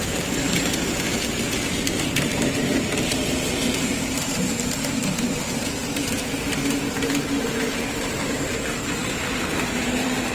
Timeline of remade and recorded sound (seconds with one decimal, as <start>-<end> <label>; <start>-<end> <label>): 0.0-10.3 remade

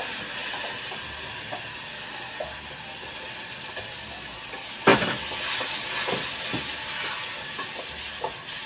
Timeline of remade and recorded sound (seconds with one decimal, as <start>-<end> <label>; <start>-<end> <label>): 0.0-8.7 recorded

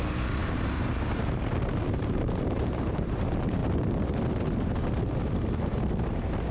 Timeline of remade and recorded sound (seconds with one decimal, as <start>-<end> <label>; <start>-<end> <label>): 0.0-3.6 remade; 3.6-6.5 recorded

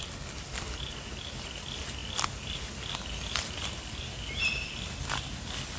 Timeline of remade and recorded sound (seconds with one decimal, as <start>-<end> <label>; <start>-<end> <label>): 0.0-5.8 recorded

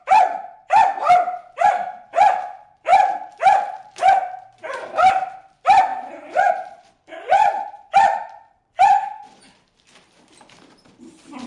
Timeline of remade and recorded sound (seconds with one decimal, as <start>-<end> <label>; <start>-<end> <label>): 0.0-11.5 remade

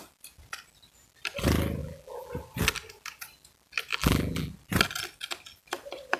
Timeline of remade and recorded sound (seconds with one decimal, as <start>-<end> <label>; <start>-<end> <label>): 0.0-1.8 recorded; 1.8-2.3 remade; 2.3-3.9 recorded; 3.9-4.5 remade; 4.5-6.2 recorded